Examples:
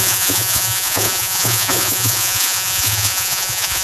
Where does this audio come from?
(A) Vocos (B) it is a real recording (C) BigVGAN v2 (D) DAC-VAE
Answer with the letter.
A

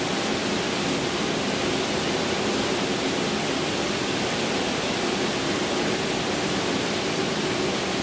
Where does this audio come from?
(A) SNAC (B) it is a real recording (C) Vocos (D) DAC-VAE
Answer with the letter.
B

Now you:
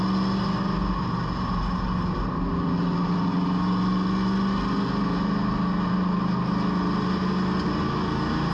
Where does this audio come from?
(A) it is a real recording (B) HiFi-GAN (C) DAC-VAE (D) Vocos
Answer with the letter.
A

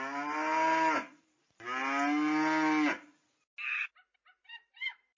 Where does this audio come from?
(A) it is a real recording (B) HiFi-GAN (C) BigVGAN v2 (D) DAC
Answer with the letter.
A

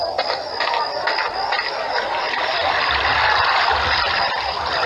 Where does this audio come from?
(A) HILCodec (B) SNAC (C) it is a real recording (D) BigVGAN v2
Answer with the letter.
C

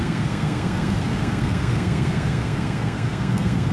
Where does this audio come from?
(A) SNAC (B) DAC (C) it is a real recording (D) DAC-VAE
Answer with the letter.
A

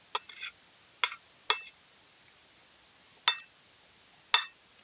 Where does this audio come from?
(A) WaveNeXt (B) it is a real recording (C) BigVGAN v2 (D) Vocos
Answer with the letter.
B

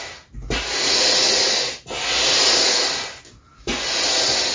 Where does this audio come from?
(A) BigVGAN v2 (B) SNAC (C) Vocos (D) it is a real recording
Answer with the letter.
D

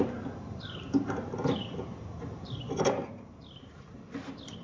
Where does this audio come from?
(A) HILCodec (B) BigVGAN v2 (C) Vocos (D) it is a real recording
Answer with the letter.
B